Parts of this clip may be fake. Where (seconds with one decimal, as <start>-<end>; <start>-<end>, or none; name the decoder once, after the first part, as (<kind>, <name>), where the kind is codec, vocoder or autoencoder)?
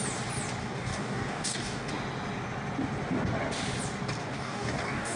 0.6-1.9 (codec, DAC); 4.2-5.2